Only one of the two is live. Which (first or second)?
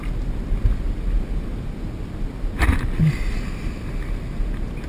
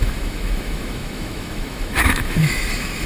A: first